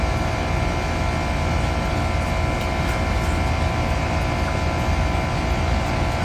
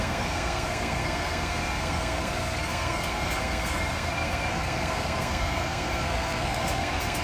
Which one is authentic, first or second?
first